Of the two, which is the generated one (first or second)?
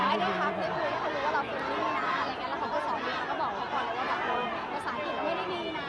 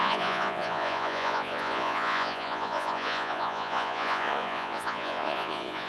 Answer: second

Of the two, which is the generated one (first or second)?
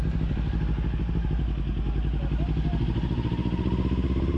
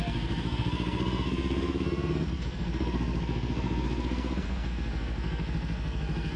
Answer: second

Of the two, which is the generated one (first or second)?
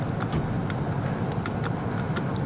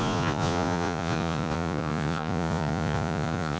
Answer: second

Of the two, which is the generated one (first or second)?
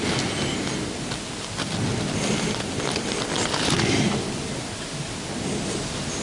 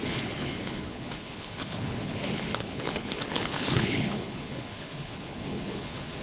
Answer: second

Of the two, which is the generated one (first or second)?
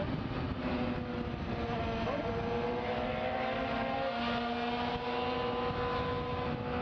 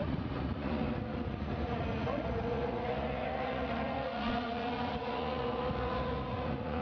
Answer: second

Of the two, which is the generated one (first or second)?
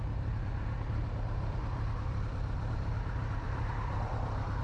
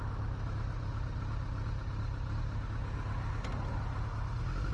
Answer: first